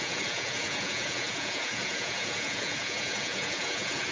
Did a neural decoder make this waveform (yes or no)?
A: yes